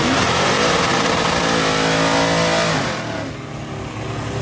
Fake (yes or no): no